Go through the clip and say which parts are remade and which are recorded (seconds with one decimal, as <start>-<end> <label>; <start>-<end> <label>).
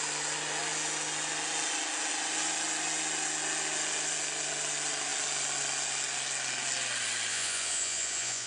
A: 0.0-7.3 recorded; 7.3-8.5 remade